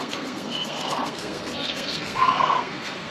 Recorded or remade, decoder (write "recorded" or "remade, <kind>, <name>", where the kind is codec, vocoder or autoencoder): remade, codec, SNAC